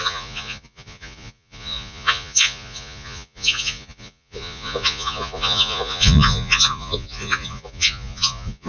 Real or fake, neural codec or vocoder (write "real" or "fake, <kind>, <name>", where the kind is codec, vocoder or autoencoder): fake, vocoder, Vocos